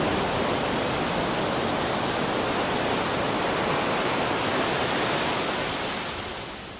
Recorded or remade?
recorded